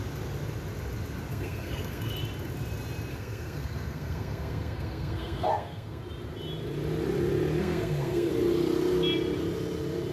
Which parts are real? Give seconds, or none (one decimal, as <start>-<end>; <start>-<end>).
0.0-1.3; 2.1-3.1; 6.0-7.6; 8.3-10.1